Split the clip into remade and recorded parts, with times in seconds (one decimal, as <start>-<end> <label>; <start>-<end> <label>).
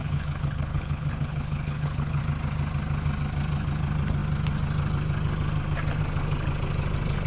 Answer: 0.0-2.2 remade; 2.2-7.3 recorded